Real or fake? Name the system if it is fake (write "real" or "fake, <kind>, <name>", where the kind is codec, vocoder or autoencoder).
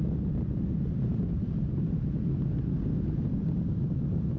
real